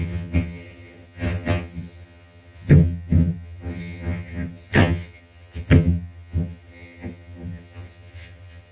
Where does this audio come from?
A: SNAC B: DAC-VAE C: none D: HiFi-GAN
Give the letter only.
D